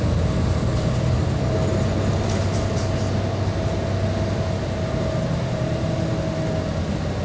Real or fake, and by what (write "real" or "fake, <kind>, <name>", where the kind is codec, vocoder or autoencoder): real